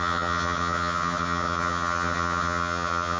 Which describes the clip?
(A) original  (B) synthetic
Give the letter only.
B